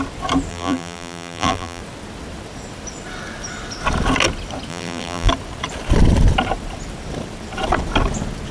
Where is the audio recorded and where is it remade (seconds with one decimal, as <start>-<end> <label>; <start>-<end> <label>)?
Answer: 0.0-0.5 recorded; 0.5-1.8 remade; 1.8-4.7 recorded; 4.7-5.3 remade; 5.3-8.5 recorded